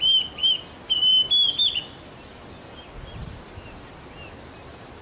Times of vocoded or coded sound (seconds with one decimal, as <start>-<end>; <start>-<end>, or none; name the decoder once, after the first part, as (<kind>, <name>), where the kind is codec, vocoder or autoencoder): none